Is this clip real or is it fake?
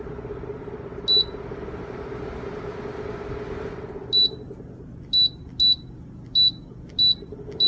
real